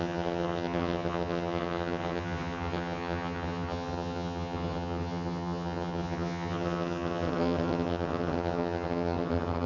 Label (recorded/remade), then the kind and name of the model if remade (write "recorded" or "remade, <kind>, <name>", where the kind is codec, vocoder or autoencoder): remade, vocoder, HiFi-GAN